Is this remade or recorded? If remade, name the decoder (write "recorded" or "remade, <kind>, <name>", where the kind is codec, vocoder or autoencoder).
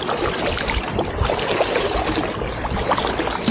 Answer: recorded